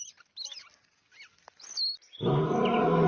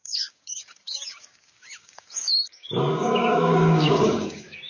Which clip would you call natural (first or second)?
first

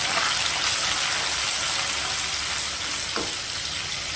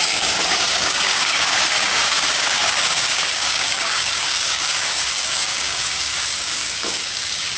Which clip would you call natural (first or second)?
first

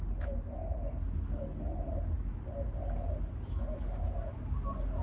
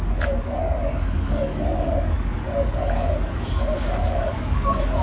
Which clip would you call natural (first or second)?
first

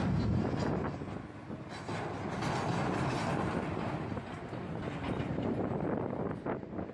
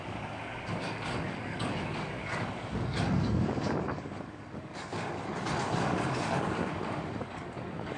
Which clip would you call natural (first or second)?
first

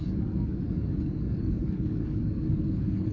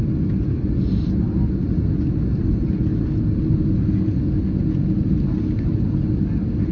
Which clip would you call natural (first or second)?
second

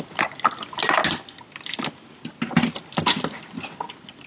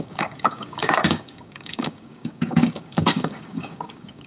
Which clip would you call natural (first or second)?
first